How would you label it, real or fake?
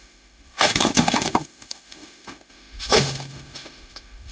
fake